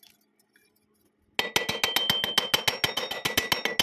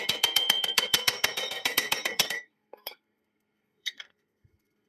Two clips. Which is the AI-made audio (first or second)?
second